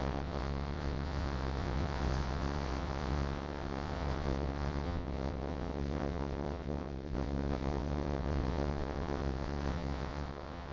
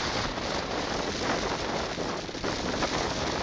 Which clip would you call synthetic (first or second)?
first